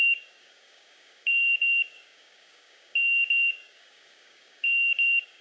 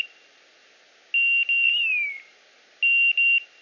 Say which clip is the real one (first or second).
second